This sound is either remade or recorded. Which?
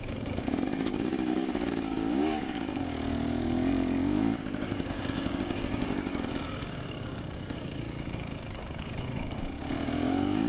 remade